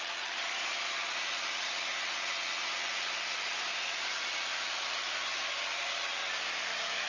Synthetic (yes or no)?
no